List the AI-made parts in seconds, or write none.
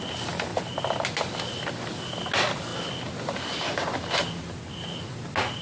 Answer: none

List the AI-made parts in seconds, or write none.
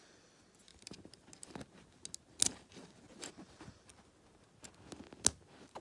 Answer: 0.7-1.5 (vocoder, BigVGAN v2); 2.5-3.9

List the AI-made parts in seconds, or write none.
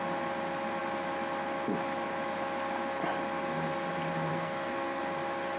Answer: 4.3-5.0 (codec, SNAC)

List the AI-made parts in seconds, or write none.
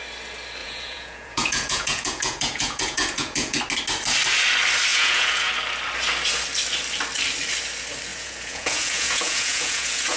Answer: 0.6-3.6 (vocoder, Vocos); 4.9-5.5; 8.1-10.2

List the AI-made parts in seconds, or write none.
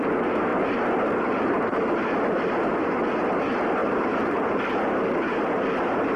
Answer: 3.8-4.7 (vocoder, BigVGAN v2)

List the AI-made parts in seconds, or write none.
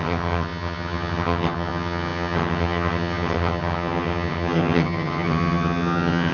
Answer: 0.0-6.3 (vocoder, HiFi-GAN)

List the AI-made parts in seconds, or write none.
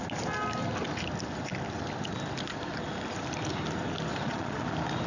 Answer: 4.1-4.6 (vocoder, Vocos)